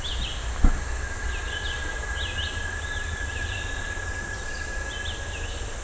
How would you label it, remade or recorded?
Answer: recorded